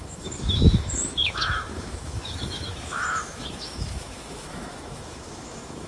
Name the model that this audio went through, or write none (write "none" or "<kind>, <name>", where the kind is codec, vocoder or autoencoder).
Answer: autoencoder, DAC-VAE